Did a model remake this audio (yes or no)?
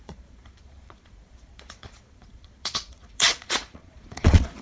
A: yes